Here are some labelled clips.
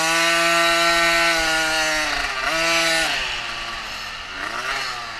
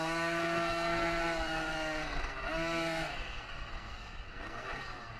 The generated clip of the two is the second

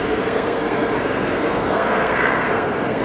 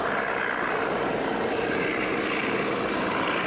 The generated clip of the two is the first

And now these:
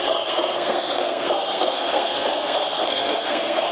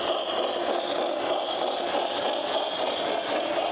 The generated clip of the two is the first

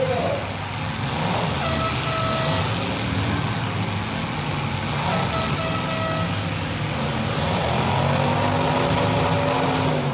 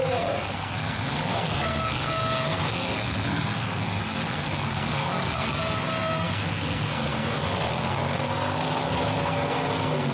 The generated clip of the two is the second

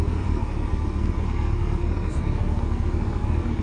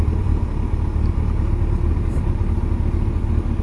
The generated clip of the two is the first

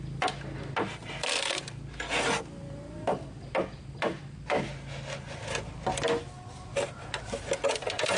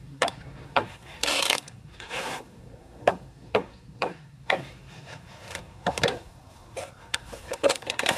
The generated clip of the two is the second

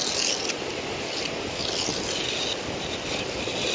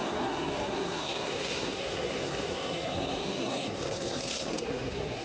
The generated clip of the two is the second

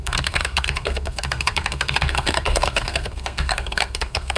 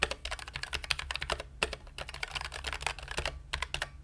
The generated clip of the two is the first